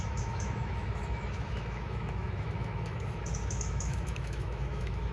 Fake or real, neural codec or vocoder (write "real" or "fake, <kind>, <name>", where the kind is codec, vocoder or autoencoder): fake, autoencoder, DAC-VAE